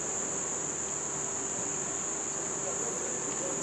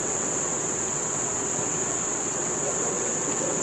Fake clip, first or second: second